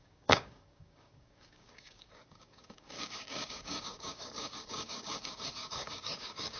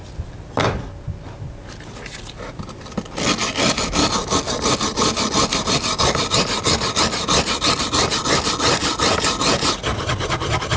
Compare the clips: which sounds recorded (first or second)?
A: second